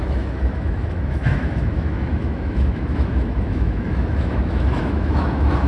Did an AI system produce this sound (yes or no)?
yes